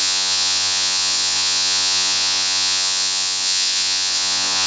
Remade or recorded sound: remade